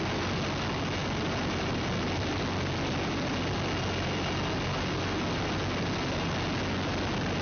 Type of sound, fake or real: real